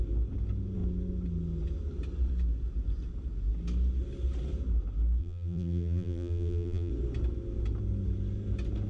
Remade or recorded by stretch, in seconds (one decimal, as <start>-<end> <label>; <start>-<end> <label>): 0.0-5.2 recorded; 5.2-6.9 remade; 6.9-8.9 recorded